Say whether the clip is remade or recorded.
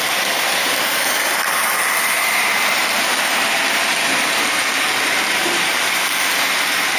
recorded